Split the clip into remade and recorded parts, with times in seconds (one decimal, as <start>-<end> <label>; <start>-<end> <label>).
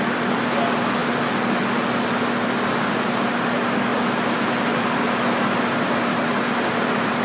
0.0-7.2 recorded